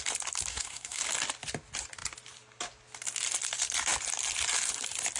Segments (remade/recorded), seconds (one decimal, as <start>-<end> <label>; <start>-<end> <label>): 0.0-0.5 recorded; 0.5-1.0 remade; 1.0-5.2 recorded